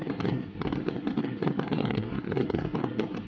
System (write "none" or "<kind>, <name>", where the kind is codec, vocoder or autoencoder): codec, SNAC